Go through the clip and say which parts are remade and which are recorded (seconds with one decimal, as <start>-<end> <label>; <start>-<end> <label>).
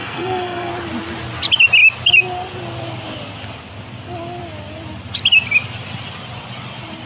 0.0-0.7 remade; 0.7-7.1 recorded